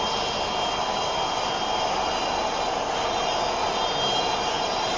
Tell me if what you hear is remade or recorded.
recorded